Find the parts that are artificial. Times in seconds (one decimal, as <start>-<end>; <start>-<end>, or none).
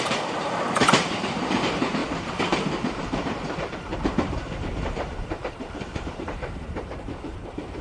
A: 0.0-7.8